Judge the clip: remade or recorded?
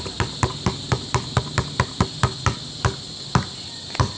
recorded